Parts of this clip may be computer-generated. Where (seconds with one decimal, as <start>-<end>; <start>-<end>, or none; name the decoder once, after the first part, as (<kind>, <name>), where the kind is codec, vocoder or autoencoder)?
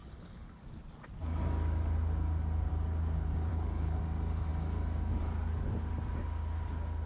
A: 0.0-0.6 (codec, HILCodec); 3.5-4.0